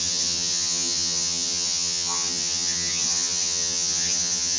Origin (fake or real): fake